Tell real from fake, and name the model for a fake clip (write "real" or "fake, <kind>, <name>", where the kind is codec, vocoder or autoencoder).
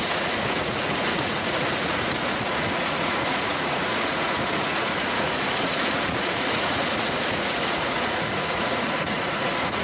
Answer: fake, vocoder, Vocos